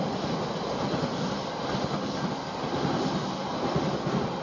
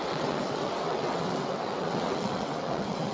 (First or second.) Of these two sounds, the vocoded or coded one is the second